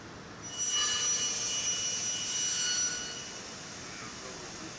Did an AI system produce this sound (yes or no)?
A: no